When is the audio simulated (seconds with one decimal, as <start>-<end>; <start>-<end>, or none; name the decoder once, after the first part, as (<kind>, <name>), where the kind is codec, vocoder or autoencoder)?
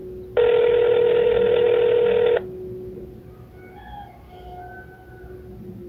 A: none